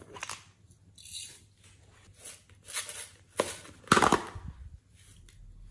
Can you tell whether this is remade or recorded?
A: recorded